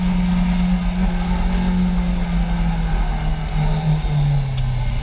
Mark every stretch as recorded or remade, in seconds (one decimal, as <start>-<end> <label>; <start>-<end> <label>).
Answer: 0.0-5.0 recorded

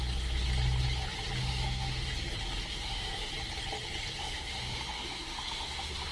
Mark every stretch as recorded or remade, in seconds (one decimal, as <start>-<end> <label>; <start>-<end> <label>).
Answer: 0.0-1.4 recorded; 1.4-2.1 remade; 2.1-2.7 recorded; 2.7-3.3 remade; 3.3-4.2 recorded; 4.2-6.1 remade